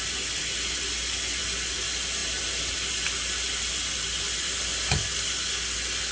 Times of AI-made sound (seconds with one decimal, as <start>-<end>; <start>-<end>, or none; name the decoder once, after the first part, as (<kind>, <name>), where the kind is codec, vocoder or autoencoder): none